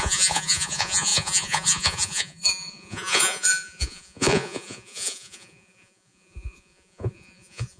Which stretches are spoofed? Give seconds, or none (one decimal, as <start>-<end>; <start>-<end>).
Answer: 0.0-7.8

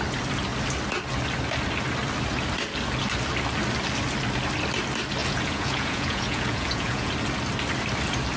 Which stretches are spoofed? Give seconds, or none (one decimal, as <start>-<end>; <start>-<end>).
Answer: 5.2-7.1